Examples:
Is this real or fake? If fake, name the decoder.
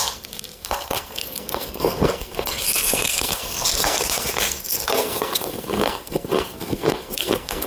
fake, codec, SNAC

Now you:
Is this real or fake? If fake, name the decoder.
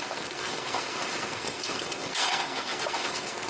fake, codec, SNAC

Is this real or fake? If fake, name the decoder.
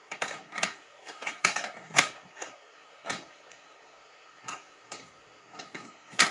fake, codec, SNAC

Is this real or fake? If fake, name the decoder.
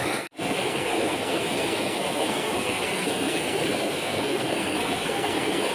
fake, codec, SNAC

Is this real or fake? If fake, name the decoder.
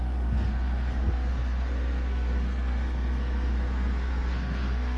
fake, codec, SNAC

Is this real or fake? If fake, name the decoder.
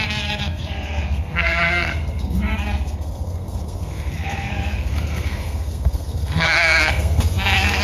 fake, codec, SNAC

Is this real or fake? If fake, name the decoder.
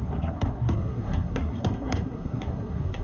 fake, codec, SNAC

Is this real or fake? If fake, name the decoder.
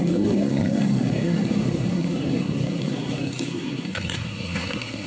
fake, codec, SNAC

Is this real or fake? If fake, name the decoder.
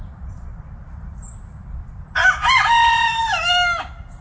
real